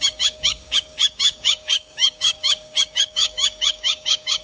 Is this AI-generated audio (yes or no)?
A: yes